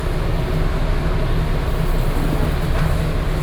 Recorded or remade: recorded